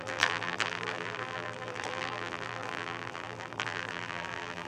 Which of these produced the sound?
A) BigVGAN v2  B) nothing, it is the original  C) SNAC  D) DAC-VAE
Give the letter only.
A